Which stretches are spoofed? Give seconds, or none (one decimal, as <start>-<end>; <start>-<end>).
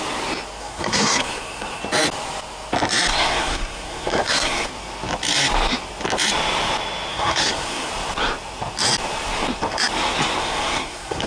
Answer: 0.6-1.8; 3.1-4.7; 7.1-7.9; 10.4-11.3